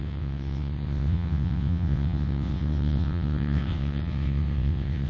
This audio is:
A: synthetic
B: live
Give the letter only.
A